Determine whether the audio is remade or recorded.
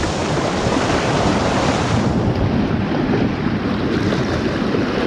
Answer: remade